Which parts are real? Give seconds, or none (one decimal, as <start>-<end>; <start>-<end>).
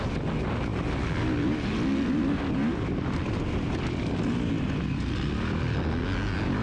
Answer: 0.0-6.6